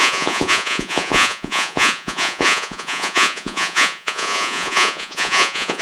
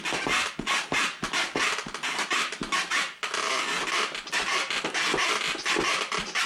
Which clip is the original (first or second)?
second